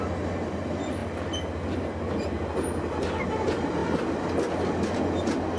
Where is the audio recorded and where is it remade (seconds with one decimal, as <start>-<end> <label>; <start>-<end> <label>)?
0.0-5.6 recorded